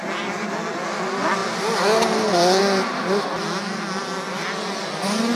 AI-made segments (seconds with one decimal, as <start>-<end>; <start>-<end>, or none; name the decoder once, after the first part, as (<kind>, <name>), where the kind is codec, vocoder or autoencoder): none